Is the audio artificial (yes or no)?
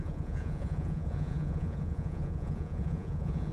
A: yes